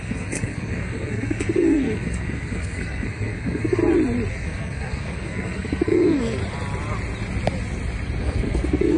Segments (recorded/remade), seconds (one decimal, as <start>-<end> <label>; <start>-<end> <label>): 0.0-3.8 remade; 3.8-4.3 recorded; 4.3-6.4 remade; 6.4-8.2 recorded; 8.2-9.0 remade